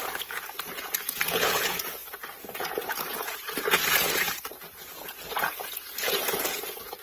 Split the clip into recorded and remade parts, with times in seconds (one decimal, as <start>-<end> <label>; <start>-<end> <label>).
0.0-7.0 remade